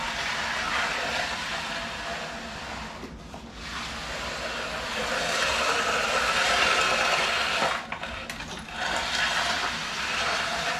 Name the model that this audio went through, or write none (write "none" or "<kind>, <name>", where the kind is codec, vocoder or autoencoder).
none